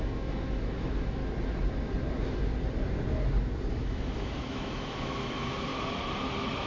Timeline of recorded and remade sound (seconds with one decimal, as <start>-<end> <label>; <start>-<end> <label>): 0.0-1.2 remade; 1.2-3.7 recorded; 3.7-5.7 remade; 5.7-6.7 recorded